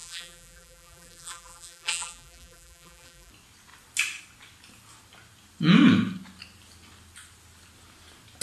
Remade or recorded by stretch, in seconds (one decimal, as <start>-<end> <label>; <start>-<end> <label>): 0.0-3.3 remade; 3.3-8.4 recorded